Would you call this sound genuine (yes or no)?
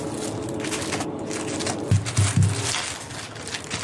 yes